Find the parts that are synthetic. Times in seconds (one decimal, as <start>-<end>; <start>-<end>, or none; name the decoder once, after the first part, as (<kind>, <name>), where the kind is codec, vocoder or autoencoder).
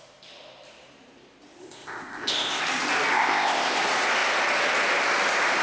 1.6-2.6 (codec, ZipCodec); 3.1-3.8